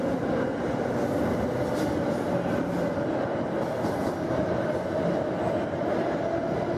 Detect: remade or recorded recorded